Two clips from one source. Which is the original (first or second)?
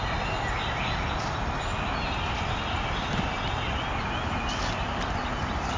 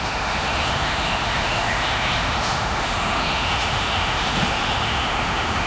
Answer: first